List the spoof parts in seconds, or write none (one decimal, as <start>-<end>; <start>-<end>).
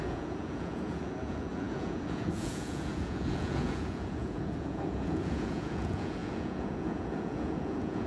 0.0-8.1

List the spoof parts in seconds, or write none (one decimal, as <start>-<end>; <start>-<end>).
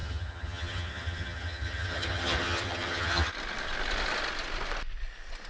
0.0-3.3